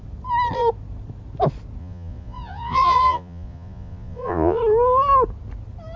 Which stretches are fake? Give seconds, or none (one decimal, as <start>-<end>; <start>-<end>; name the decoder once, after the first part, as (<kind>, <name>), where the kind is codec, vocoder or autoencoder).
1.8-4.6 (vocoder, Vocos)